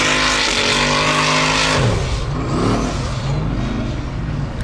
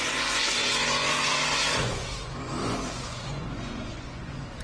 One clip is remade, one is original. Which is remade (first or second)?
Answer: second